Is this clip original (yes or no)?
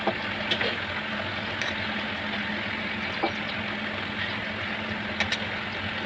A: yes